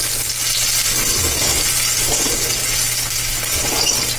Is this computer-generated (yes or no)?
no